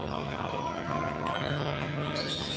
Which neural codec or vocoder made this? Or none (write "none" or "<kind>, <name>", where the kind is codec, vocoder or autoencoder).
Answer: vocoder, HiFi-GAN